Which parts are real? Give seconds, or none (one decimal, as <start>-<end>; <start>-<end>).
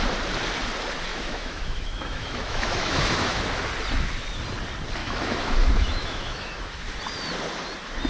0.0-1.1; 3.6-5.0; 7.0-8.1